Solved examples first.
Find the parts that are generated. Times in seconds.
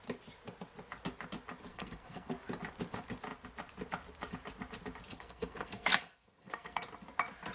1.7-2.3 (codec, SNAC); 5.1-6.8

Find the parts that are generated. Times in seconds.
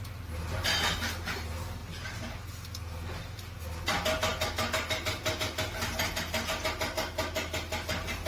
none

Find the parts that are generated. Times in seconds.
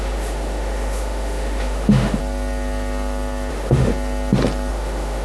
0.0-2.2 (autoencoder, DAC-VAE); 3.5-3.9; 4.7-5.2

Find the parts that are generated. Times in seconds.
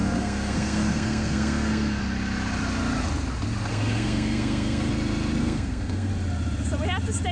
0.0-2.0 (codec, SNAC); 3.7-4.9; 5.4-6.1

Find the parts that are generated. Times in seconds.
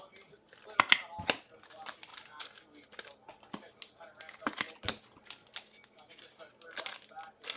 none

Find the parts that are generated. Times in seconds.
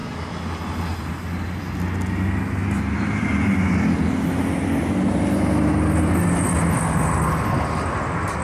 none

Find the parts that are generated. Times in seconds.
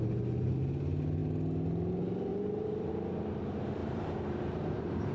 2.3-2.9 (vocoder, BigVGAN v2); 3.8-5.1